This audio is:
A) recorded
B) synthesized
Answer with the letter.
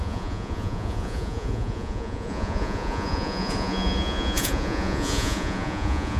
B